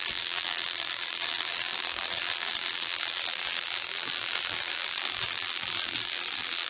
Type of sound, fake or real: fake